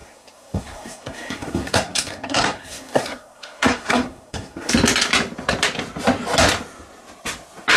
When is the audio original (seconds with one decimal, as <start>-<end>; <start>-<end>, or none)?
4.7-7.8